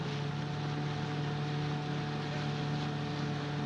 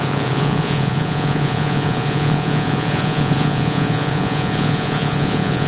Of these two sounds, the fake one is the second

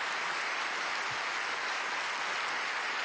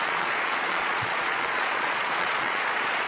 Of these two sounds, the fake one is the second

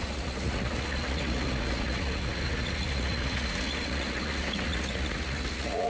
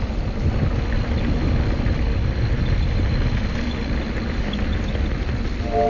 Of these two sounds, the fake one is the first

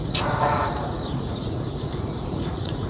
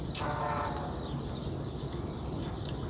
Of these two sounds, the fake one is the first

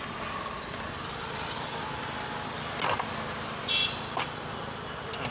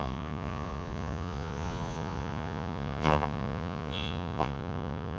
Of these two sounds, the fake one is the second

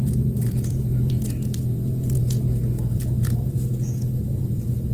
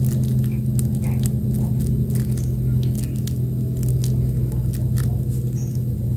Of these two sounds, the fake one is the first